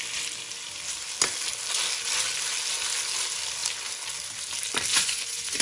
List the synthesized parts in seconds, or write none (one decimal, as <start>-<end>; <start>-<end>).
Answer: 4.9-5.6

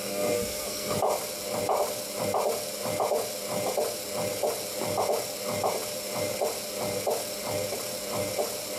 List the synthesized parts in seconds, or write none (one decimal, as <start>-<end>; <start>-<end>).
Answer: 0.0-1.0

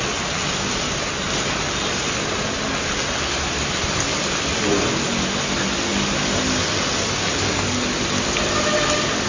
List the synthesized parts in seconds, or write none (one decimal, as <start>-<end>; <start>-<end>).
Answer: none

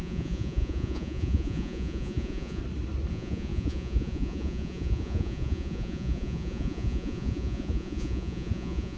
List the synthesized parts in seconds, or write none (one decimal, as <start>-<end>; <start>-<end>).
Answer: 0.0-2.6; 3.1-9.0

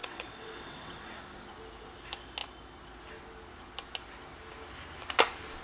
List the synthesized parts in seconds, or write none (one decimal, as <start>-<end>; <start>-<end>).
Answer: 0.0-1.2